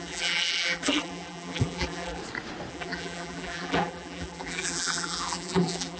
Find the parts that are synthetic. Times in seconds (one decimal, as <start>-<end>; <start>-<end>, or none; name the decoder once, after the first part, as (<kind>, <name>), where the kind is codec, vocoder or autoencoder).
0.0-2.2 (vocoder, BigVGAN v2); 2.7-6.0